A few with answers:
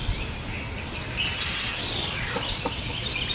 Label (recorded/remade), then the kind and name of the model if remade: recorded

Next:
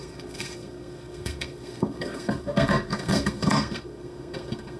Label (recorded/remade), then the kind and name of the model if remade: remade, codec, SNAC